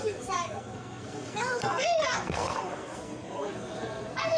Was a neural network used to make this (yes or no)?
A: yes